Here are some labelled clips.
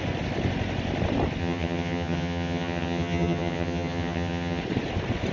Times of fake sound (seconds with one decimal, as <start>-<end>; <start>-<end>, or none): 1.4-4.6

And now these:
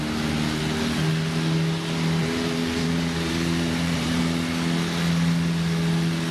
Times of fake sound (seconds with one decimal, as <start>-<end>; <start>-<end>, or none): 2.2-4.2

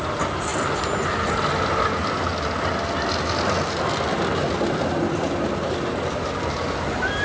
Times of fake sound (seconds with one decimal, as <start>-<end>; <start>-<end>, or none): none